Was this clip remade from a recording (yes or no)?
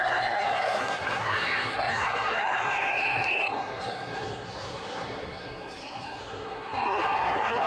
yes